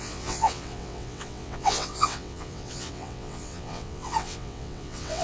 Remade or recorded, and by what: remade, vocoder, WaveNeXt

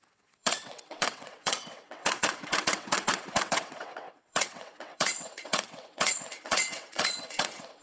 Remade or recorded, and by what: remade, vocoder, WaveNeXt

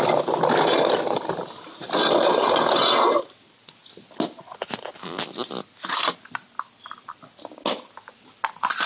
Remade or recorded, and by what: recorded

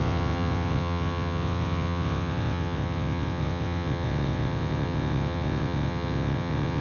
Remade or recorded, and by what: remade, vocoder, WaveNeXt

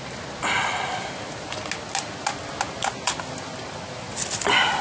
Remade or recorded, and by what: recorded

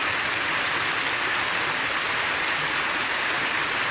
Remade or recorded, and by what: recorded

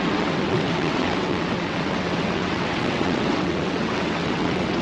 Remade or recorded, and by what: remade, vocoder, WaveNeXt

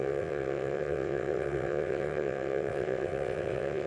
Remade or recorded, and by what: remade, vocoder, WaveNeXt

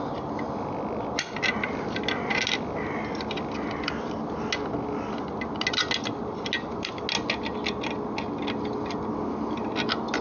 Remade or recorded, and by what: recorded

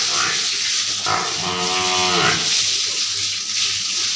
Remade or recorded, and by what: recorded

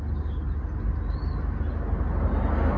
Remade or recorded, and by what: recorded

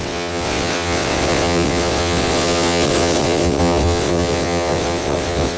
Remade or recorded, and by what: remade, vocoder, WaveNeXt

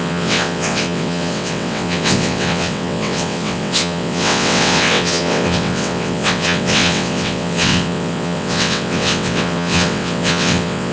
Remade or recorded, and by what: remade, vocoder, WaveNeXt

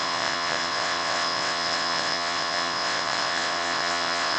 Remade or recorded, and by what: remade, vocoder, WaveNeXt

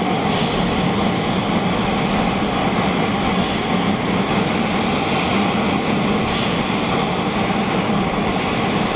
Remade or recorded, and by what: recorded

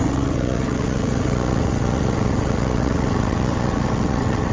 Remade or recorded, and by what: remade, vocoder, WaveNeXt